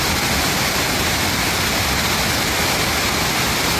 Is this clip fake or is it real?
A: real